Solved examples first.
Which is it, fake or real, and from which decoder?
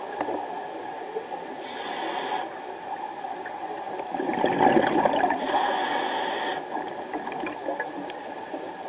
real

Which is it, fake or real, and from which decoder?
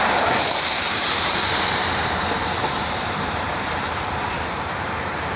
fake, vocoder, BigVGAN v2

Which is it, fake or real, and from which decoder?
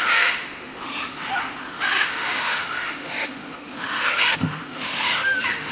fake, autoencoder, DAC-VAE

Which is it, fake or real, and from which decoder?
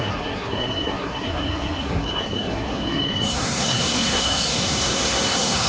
fake, codec, SNAC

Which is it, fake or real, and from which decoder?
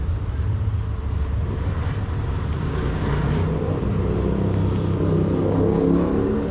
real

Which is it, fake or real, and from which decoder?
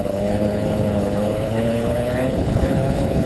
fake, codec, HILCodec